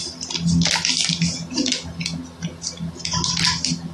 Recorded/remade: recorded